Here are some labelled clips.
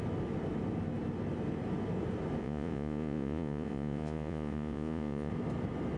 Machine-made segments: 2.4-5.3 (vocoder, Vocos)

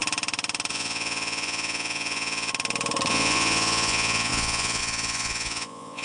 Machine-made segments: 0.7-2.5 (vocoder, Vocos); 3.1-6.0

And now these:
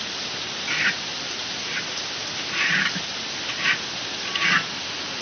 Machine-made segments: none